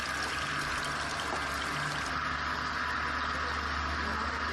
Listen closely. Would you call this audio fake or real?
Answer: real